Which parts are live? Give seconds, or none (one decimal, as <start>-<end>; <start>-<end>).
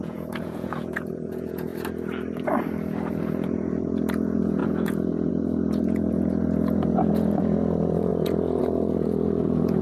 1.7-3.1